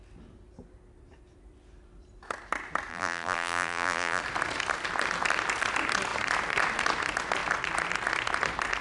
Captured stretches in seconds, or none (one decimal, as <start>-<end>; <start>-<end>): 0.0-2.9; 4.2-8.8